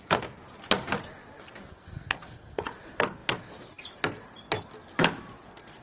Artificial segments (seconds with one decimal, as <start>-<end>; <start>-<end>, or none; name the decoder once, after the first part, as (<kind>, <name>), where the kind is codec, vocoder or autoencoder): 1.7-2.6 (codec, SNAC)